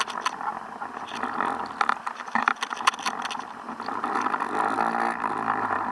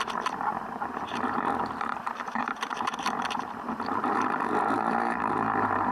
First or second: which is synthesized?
second